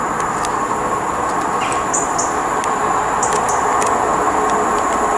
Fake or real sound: real